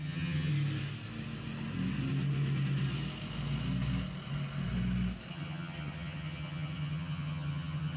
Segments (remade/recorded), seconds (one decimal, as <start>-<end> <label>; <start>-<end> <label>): 0.0-0.5 remade; 0.5-5.3 recorded; 5.3-8.0 remade

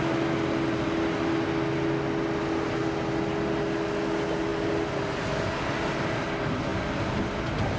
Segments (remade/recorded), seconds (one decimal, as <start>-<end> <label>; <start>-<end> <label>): 0.0-7.8 recorded

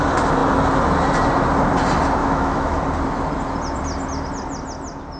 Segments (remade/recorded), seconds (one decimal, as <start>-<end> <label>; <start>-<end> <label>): 0.0-2.2 recorded; 2.2-2.8 remade; 2.8-5.2 recorded

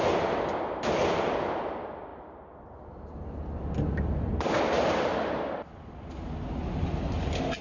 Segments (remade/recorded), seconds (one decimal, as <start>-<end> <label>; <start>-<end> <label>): 0.0-7.6 recorded